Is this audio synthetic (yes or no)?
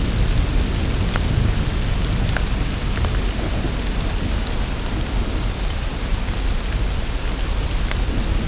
no